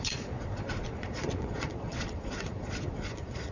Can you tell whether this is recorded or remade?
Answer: remade